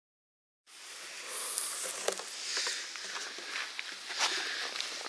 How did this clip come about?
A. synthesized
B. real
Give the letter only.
B